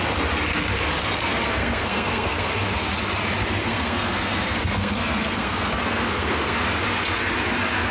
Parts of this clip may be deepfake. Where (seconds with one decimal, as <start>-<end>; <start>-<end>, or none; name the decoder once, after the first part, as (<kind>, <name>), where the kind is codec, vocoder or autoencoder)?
1.2-2.5 (codec, SNAC); 3.6-6.8